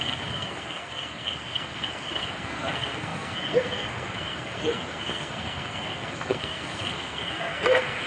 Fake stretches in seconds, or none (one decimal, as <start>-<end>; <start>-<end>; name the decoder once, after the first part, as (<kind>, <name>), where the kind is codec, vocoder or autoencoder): 0.0-8.1 (codec, SNAC)